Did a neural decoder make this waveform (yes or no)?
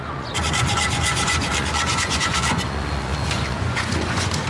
yes